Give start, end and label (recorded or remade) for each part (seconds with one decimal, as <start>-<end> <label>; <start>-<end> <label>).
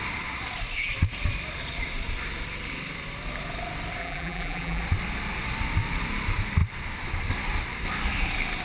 0.0-4.0 recorded; 4.0-4.8 remade; 4.8-8.6 recorded